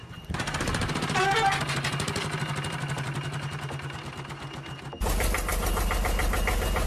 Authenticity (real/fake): real